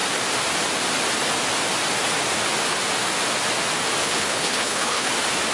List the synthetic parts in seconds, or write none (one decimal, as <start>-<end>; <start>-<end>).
4.0-5.1